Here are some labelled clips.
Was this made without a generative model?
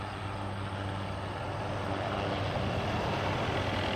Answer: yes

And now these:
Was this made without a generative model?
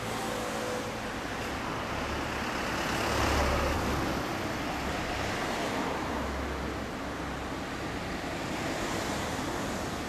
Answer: yes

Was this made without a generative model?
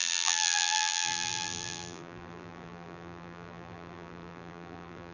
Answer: no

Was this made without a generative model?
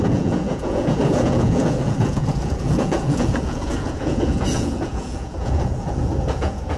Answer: no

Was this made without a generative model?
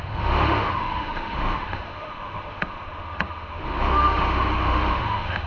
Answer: no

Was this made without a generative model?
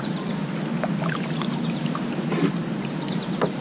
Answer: yes